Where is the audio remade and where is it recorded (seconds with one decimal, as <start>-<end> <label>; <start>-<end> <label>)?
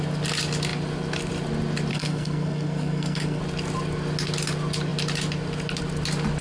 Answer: 0.0-1.9 recorded; 1.9-3.4 remade; 3.4-6.4 recorded